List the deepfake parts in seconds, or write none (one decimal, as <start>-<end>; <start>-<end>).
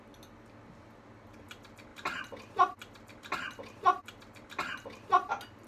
none